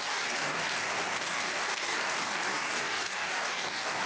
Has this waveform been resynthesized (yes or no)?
yes